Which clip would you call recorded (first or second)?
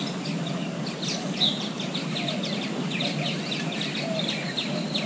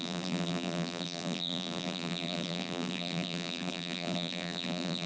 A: first